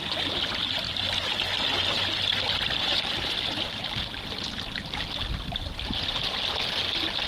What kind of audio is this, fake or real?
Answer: real